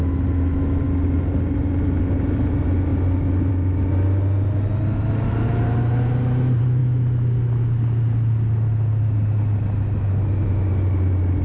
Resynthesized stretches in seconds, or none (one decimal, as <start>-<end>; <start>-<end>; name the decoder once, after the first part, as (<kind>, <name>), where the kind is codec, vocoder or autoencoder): none